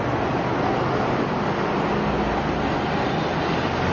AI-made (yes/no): no